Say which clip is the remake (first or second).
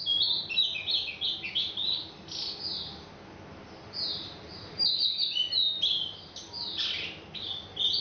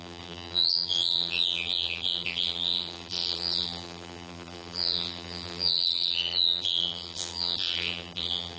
second